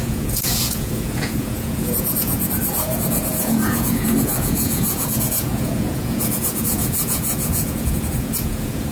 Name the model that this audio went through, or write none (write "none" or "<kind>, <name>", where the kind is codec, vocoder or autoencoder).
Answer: vocoder, Vocos